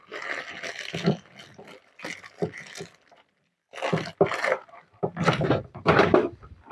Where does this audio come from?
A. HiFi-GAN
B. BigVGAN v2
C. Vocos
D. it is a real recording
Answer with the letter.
D